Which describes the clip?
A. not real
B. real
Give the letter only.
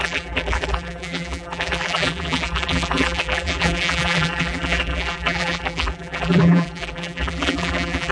A